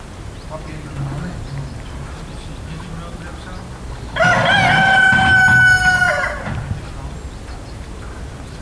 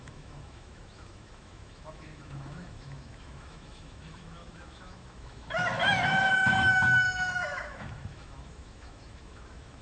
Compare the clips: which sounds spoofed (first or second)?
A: second